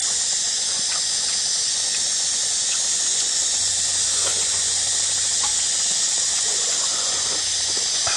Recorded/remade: remade